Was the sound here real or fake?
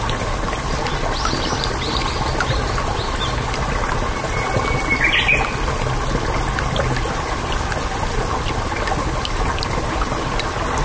real